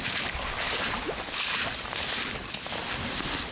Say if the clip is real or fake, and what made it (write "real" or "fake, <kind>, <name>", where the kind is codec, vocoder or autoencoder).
real